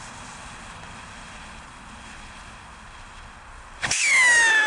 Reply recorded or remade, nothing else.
recorded